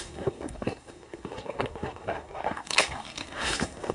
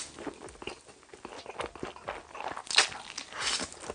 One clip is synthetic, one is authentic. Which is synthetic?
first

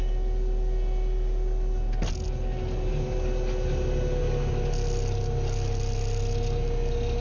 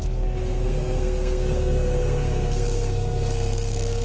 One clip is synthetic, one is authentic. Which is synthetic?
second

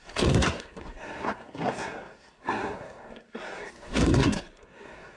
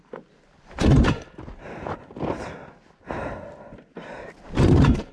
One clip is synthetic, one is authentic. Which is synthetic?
first